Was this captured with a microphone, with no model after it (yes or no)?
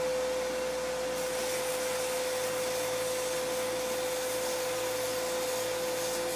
yes